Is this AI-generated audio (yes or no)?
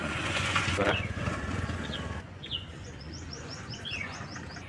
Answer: yes